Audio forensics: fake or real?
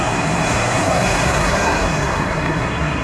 fake